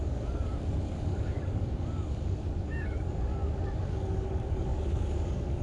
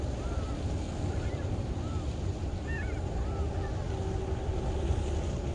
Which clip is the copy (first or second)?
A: first